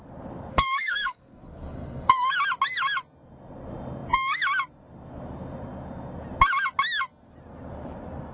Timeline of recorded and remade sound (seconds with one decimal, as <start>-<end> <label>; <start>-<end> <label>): 0.0-0.5 recorded; 0.5-2.3 remade; 2.3-8.3 recorded